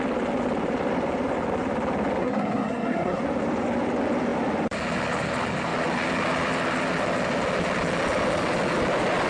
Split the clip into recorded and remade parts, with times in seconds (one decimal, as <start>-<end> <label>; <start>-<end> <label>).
0.0-2.2 recorded; 2.2-3.2 remade; 3.2-9.3 recorded